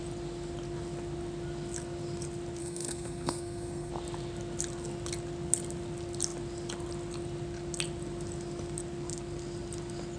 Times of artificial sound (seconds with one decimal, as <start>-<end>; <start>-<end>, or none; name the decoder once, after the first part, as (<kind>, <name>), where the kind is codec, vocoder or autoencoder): 2.6-3.9 (codec, SNAC)